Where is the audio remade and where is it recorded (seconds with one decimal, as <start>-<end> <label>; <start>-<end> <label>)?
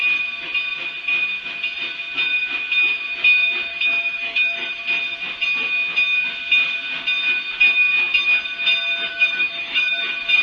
0.0-3.7 recorded; 3.7-4.8 remade; 4.8-9.1 recorded; 9.1-10.0 remade; 10.0-10.4 recorded